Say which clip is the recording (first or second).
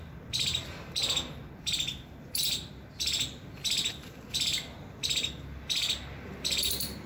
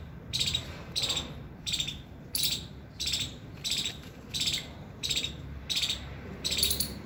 first